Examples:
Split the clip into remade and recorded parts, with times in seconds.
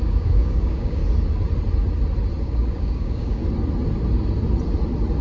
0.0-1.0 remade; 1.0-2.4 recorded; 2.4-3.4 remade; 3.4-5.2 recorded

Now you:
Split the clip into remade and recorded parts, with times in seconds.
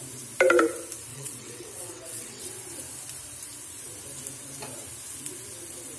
0.0-1.1 recorded; 1.1-2.5 remade; 2.5-6.0 recorded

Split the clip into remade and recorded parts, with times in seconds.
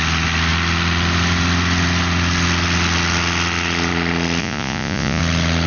0.0-4.4 recorded; 4.4-5.2 remade; 5.2-5.7 recorded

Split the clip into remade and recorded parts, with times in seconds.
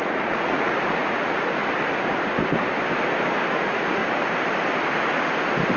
0.0-1.6 remade; 1.6-3.5 recorded; 3.5-4.0 remade; 4.0-5.8 recorded